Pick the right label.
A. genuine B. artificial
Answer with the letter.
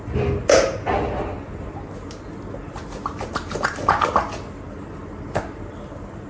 A